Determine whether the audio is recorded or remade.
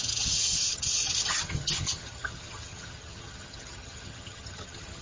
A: remade